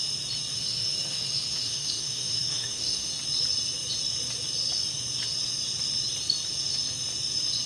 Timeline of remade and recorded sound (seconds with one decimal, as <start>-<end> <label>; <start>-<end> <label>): 0.0-0.5 recorded; 0.5-3.1 remade; 3.1-7.7 recorded